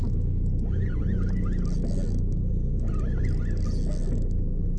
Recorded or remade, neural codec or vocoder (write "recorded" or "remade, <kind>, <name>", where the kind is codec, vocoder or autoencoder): recorded